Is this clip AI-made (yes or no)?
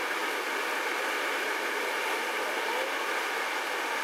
no